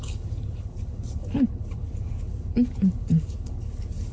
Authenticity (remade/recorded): remade